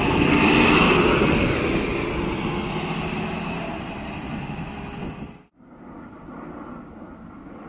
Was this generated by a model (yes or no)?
no